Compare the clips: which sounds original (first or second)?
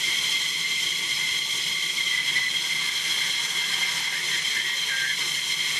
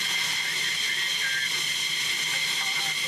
second